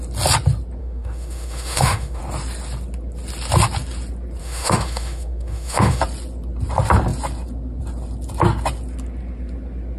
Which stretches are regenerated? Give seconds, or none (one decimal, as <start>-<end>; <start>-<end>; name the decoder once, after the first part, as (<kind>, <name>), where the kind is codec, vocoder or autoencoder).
0.8-2.2 (autoencoder, DAC-VAE); 4.4-6.0